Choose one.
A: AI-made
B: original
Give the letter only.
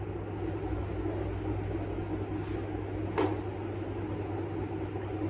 B